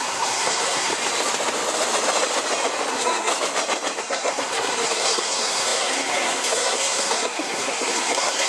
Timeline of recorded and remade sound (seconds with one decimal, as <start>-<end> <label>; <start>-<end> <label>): 0.0-0.9 remade; 0.9-2.9 recorded; 2.9-3.3 remade; 3.3-4.0 recorded; 4.0-8.5 remade